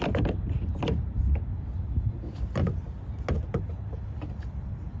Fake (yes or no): no